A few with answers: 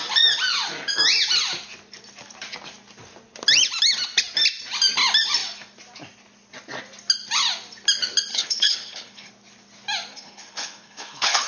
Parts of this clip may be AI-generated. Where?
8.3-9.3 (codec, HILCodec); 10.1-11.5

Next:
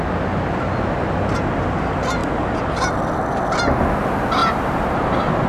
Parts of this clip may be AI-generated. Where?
2.2-2.9 (vocoder, BigVGAN v2); 4.4-5.5